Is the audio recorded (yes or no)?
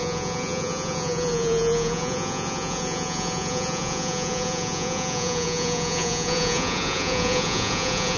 no